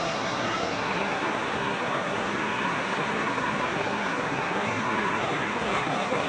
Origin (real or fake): fake